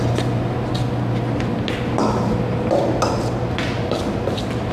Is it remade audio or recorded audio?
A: recorded